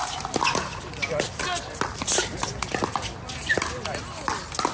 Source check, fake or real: real